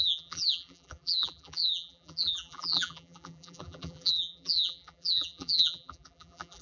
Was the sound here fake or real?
fake